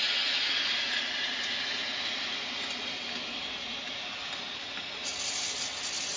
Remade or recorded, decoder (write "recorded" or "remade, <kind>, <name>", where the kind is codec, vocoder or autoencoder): recorded